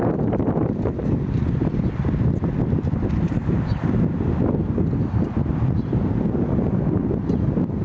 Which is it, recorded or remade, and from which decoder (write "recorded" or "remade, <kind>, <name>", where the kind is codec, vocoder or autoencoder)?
recorded